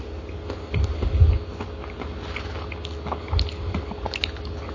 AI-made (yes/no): no